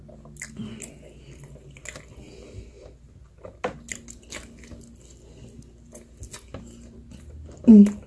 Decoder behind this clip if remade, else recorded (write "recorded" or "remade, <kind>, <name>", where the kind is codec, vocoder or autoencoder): recorded